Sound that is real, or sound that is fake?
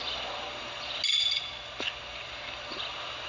real